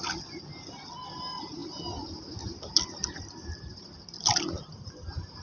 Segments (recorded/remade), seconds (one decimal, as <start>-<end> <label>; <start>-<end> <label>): 0.0-5.4 recorded